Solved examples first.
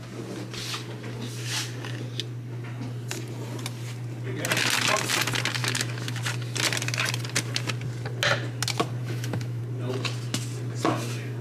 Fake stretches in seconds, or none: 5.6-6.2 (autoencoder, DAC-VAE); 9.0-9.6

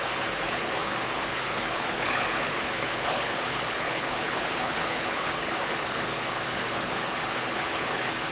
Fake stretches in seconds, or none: 0.0-8.3 (codec, HILCodec)

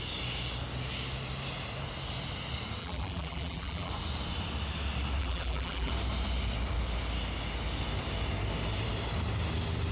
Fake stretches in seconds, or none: 2.8-3.9 (vocoder, BigVGAN v2); 5.2-5.9

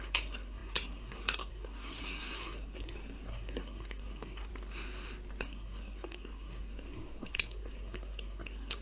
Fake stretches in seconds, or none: 0.0-4.5 (codec, SNAC); 5.4-8.8

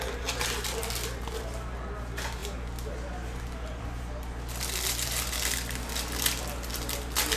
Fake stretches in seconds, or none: none